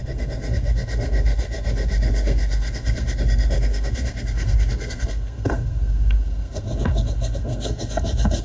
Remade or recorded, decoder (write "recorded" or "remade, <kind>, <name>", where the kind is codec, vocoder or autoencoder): remade, codec, SNAC